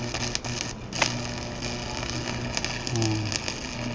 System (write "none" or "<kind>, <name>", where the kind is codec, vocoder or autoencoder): none